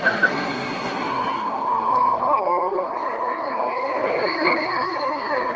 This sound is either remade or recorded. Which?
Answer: remade